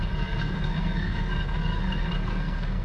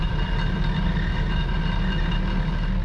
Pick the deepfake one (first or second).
first